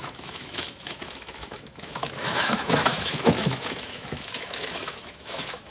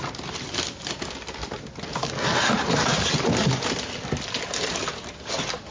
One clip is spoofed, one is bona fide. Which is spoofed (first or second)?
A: first